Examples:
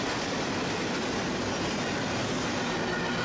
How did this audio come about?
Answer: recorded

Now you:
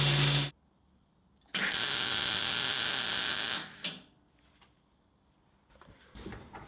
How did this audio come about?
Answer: recorded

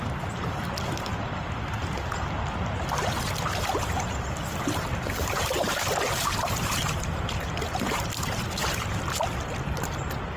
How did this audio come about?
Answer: recorded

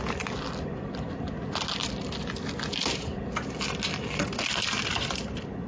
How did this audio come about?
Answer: recorded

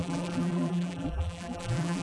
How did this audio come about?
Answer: remade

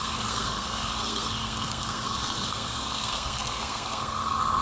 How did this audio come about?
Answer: remade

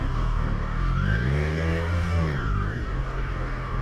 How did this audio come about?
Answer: remade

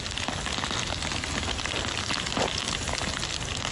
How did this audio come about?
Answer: recorded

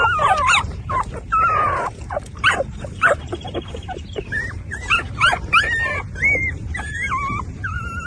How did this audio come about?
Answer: remade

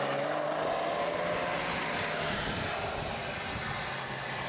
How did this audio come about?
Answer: recorded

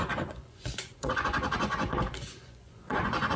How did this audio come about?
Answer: remade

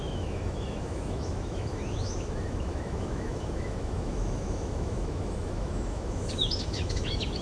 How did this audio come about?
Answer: remade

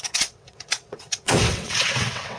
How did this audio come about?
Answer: remade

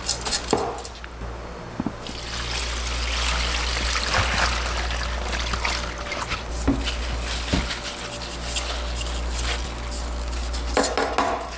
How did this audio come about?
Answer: recorded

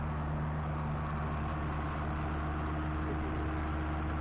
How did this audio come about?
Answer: recorded